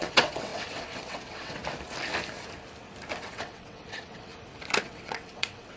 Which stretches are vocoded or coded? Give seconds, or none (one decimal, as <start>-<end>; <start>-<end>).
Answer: 0.0-1.6; 3.2-4.3; 4.8-5.8